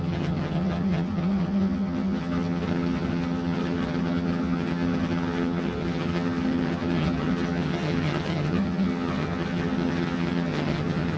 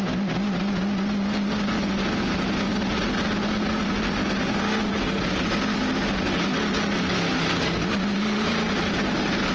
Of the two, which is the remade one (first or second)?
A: first